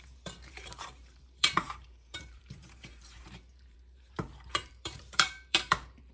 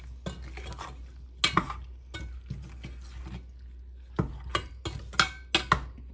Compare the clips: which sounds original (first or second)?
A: second